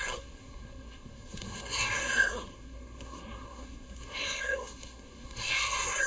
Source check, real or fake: fake